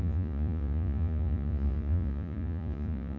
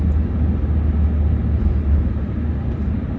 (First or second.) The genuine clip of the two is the second